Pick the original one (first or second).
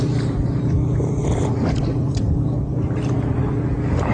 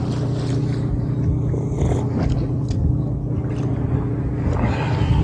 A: second